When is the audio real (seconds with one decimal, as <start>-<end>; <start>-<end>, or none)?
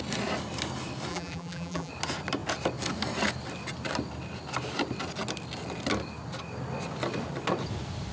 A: 0.0-1.1; 1.9-8.1